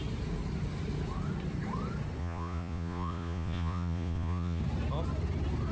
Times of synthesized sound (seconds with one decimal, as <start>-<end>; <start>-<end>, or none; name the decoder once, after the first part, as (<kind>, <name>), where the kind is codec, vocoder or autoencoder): 2.2-4.6 (vocoder, Vocos)